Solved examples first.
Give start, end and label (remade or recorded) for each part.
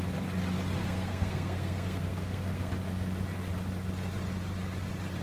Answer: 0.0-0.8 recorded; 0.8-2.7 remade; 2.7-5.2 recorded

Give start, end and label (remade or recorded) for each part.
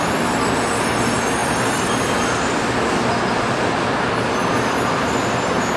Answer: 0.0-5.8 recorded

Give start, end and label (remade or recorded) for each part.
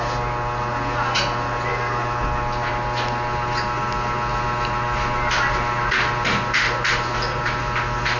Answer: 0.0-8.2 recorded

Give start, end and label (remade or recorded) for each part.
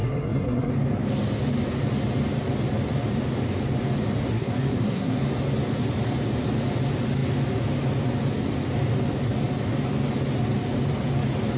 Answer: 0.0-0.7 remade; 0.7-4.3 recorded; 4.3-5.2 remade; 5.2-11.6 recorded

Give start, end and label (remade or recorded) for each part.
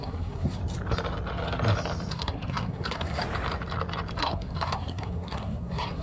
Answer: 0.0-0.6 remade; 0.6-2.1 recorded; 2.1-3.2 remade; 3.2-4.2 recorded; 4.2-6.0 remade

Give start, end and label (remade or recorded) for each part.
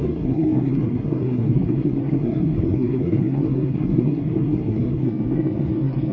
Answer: 0.0-6.1 remade